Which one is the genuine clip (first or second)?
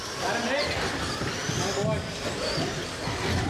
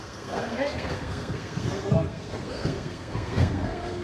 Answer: first